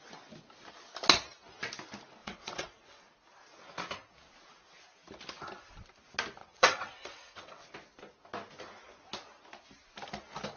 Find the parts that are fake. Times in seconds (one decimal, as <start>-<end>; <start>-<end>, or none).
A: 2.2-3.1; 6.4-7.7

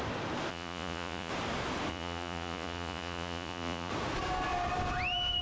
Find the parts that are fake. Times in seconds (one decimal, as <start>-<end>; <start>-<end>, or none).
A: 0.5-1.3; 1.9-3.9

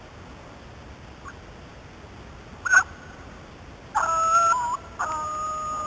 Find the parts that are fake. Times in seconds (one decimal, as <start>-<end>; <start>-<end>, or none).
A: none